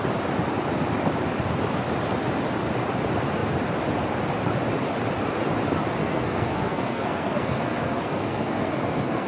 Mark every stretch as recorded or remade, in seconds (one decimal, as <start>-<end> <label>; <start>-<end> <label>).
0.0-6.0 recorded; 6.0-9.3 remade